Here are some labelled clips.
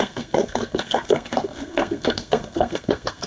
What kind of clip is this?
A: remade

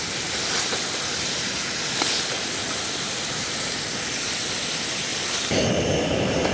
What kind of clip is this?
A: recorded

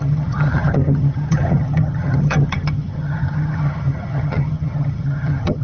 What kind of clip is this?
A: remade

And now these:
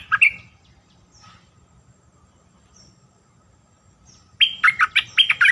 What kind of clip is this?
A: recorded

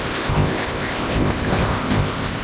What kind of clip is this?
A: remade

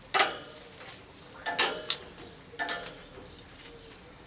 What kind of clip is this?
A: recorded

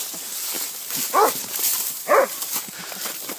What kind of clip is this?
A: recorded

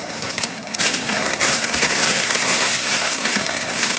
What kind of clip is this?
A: remade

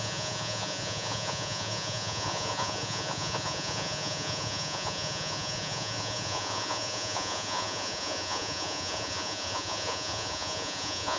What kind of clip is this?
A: remade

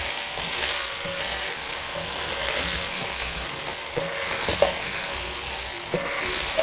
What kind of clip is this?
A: remade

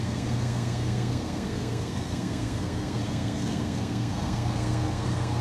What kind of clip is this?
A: remade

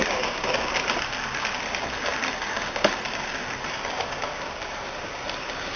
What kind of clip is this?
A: recorded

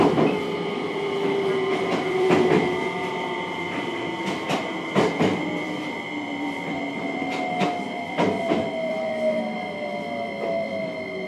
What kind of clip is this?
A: remade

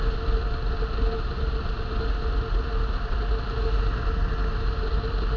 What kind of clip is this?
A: recorded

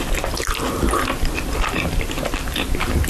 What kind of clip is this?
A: recorded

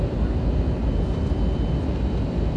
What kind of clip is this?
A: recorded